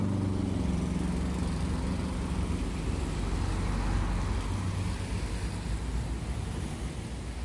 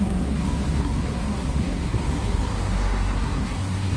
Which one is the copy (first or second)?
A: second